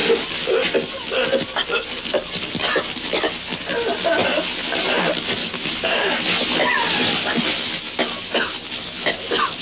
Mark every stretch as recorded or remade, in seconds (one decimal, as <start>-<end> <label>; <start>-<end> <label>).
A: 0.0-5.4 recorded; 5.4-6.2 remade; 6.2-9.6 recorded